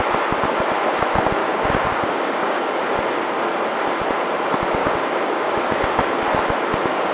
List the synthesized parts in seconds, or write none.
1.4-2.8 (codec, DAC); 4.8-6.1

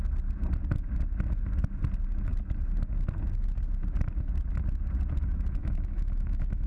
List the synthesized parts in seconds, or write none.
5.6-6.7 (autoencoder, DAC-VAE)

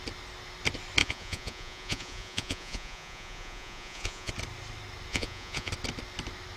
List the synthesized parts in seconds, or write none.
1.0-4.3 (vocoder, Vocos); 5.1-5.7

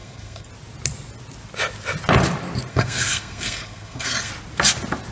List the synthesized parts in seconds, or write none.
0.0-0.5 (codec, SNAC); 2.7-4.3

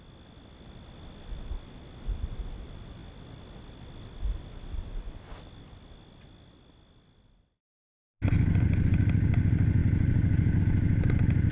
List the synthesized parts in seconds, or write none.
none

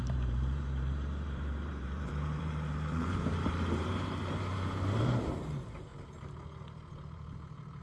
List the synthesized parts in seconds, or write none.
0.0-5.9 (vocoder, BigVGAN v2); 7.0-7.8

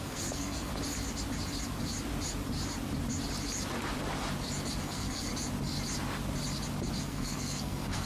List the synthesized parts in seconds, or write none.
0.0-0.7 (codec, SNAC); 4.8-5.3; 7.0-8.1

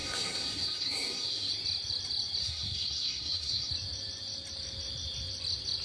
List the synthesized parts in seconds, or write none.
0.0-1.5 (codec, SNAC); 2.4-3.7